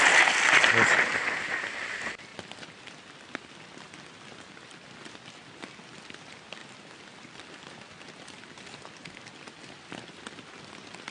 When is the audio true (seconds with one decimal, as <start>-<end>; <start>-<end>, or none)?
0.0-11.1